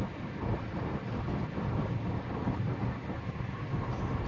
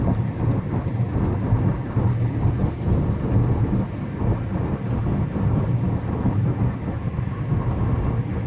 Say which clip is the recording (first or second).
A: second